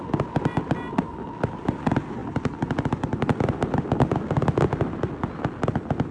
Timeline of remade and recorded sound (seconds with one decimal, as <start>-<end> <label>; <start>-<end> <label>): 0.0-6.1 recorded